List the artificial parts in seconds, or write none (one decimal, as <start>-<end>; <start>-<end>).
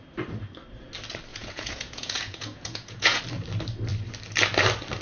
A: 1.3-3.2